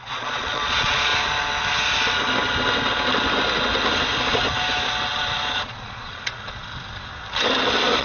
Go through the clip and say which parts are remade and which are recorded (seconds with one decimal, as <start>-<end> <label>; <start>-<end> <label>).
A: 0.0-1.1 remade; 1.1-5.5 recorded; 5.5-6.6 remade; 6.6-8.0 recorded